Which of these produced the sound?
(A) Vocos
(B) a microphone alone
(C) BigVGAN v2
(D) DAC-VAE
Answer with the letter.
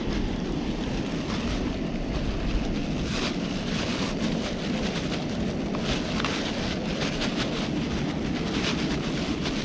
B